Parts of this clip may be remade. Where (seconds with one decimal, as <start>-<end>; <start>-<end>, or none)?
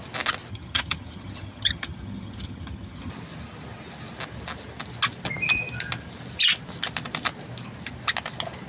0.5-3.1